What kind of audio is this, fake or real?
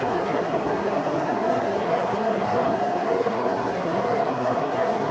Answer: fake